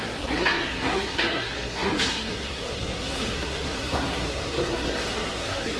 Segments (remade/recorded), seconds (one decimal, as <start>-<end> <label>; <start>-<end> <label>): 0.0-5.8 remade